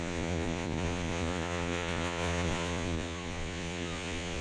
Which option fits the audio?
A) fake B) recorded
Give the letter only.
A